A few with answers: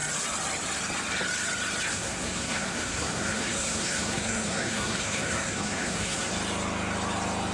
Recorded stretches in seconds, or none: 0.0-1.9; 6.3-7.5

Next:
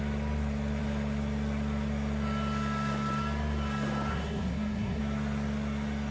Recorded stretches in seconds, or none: 0.0-4.1; 5.0-6.1

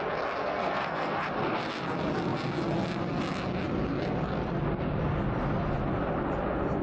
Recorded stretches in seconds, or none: 0.0-0.4; 1.2-6.8